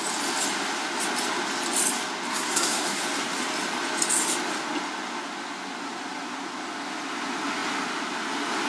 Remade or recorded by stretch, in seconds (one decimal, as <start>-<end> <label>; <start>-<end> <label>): 0.0-2.3 recorded; 2.3-3.0 remade; 3.0-8.7 recorded

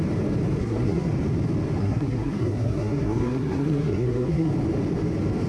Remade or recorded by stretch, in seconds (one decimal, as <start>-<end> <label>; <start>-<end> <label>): 0.0-0.6 recorded; 0.6-1.1 remade; 1.1-1.8 recorded; 1.8-4.5 remade; 4.5-5.5 recorded

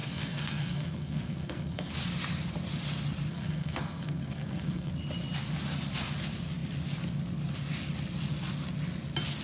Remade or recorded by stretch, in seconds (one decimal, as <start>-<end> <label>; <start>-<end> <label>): 0.0-1.9 remade; 1.9-3.3 recorded; 3.3-4.9 remade; 4.9-9.4 recorded

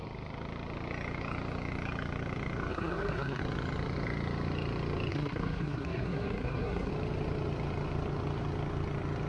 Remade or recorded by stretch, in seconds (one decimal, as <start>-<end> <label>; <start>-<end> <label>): 0.0-2.7 recorded; 2.7-3.4 remade; 3.4-5.1 recorded; 5.1-6.9 remade; 6.9-9.3 recorded